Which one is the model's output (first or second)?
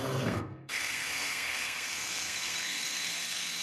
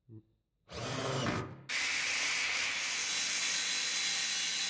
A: first